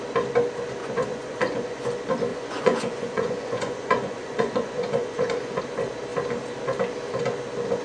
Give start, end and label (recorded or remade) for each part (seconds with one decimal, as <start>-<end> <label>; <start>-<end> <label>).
0.0-0.8 recorded; 0.8-1.8 remade; 1.8-2.3 recorded; 2.3-5.6 remade; 5.6-7.8 recorded